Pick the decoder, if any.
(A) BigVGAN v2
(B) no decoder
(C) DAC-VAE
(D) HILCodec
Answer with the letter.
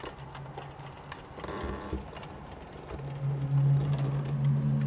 B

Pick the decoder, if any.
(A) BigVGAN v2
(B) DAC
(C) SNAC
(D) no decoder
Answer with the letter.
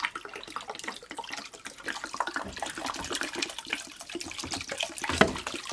D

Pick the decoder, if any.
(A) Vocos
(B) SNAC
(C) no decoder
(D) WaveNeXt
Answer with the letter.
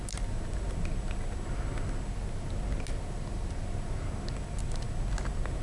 C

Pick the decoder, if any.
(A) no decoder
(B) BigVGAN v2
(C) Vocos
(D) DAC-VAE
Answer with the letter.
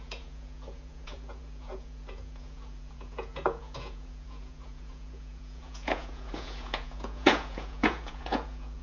C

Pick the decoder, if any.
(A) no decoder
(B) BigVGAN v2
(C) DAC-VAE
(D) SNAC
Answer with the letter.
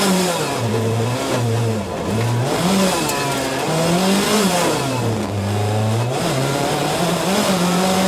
A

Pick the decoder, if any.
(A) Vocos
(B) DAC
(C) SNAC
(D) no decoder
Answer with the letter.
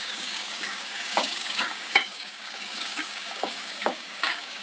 B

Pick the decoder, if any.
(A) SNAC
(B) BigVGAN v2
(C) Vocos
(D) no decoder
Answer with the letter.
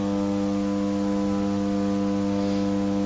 D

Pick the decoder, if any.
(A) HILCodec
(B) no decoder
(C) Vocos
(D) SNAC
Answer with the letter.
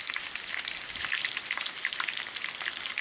B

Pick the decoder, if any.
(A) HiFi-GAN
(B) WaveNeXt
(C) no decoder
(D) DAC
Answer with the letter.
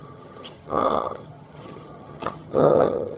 A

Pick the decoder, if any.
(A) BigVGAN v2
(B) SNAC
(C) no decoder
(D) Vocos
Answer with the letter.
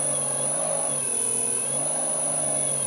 C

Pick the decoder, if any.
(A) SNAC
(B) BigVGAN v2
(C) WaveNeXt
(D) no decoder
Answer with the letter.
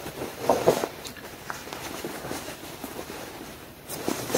B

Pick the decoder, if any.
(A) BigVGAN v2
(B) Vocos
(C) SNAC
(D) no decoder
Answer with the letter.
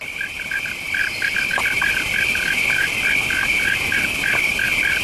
D